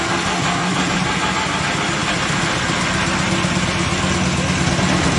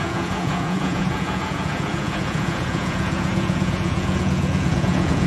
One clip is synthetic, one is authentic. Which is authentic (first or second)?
first